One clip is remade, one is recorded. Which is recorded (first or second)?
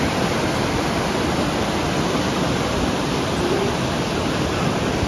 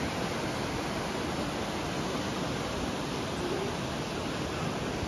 second